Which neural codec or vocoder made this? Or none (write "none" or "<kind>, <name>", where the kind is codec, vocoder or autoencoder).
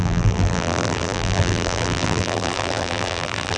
vocoder, BigVGAN v2